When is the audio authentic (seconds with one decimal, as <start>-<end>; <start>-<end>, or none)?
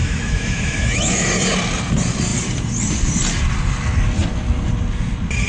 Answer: 1.3-5.5